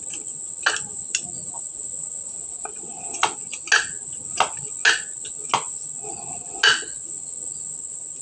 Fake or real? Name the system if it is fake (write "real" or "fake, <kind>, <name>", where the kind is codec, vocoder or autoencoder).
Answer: real